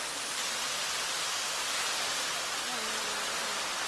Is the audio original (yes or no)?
yes